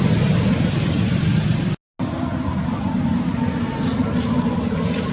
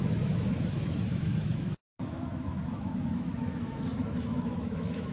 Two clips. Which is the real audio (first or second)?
first